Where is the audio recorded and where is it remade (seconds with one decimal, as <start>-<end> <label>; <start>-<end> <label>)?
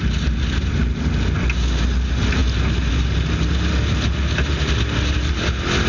0.0-5.9 recorded